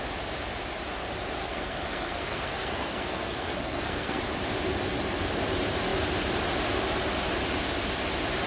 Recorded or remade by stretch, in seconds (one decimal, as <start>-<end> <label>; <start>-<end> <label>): 0.0-1.4 recorded; 1.4-4.2 remade; 4.2-8.5 recorded